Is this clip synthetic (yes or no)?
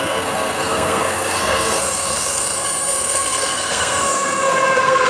yes